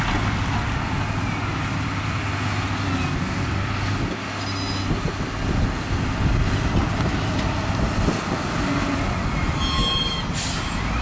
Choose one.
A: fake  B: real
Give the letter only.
B